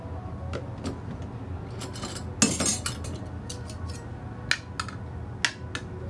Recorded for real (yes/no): yes